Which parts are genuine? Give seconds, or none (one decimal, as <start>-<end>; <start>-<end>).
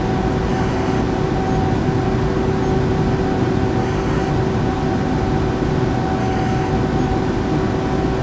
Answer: 0.0-0.5; 1.0-3.8; 4.3-6.2; 6.7-8.2